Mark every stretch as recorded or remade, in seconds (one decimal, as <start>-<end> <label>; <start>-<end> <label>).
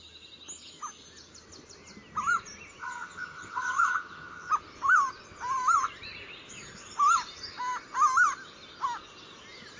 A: 0.0-2.8 recorded; 2.8-4.5 remade; 4.5-9.8 recorded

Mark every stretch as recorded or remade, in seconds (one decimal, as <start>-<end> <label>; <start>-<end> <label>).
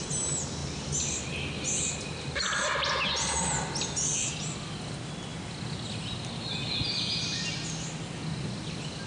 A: 0.0-9.1 recorded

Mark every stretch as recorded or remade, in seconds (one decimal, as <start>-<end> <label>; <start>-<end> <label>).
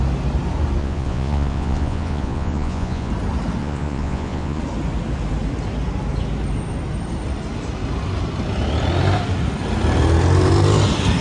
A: 0.0-0.8 recorded; 0.8-3.1 remade; 3.1-3.6 recorded; 3.6-4.6 remade; 4.6-11.2 recorded